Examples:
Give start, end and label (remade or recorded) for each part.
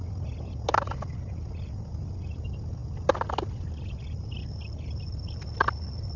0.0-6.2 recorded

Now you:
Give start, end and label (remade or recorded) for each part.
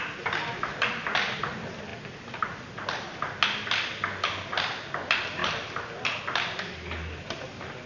0.0-7.9 recorded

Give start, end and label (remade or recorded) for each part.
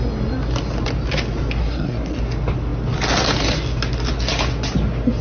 0.0-1.6 recorded; 1.6-2.2 remade; 2.2-5.2 recorded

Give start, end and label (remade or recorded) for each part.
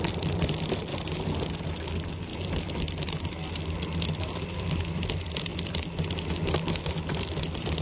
0.0-0.9 remade; 0.9-1.7 recorded; 1.7-2.3 remade; 2.3-4.2 recorded; 4.2-5.5 remade; 5.5-6.8 recorded; 6.8-7.8 remade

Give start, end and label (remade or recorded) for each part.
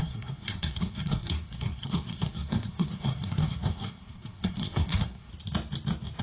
0.0-5.3 remade; 5.3-6.2 recorded